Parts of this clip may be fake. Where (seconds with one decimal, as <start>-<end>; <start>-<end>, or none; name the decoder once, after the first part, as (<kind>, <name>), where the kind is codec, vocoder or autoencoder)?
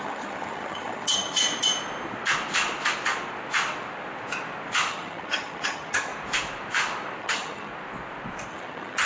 0.0-1.4 (vocoder, HiFi-GAN); 4.9-6.1; 7.2-7.7; 8.5-9.1